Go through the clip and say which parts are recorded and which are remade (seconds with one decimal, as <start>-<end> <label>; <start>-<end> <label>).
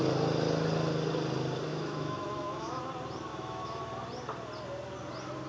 0.0-1.7 recorded; 1.7-2.8 remade; 2.8-3.3 recorded; 3.3-3.8 remade; 3.8-5.5 recorded